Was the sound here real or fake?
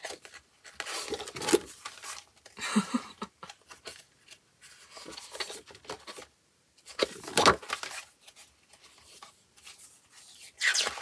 real